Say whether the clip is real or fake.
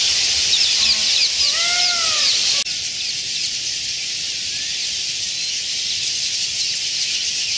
real